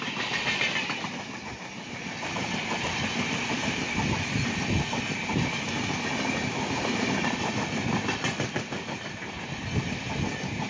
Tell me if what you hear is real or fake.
fake